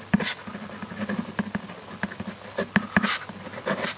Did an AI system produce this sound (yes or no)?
no